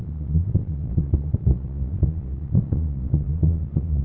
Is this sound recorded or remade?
remade